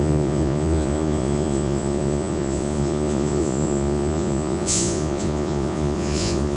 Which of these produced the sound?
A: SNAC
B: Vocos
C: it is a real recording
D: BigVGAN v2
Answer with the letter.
B